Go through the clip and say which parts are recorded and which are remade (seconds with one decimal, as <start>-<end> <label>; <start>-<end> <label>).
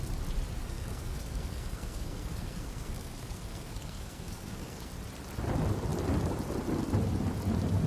0.0-0.6 recorded; 0.6-4.9 remade; 4.9-7.9 recorded